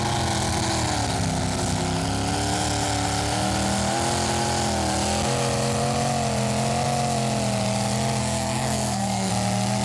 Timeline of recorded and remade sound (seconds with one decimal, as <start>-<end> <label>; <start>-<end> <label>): 0.0-8.2 recorded; 8.2-9.3 remade; 9.3-9.8 recorded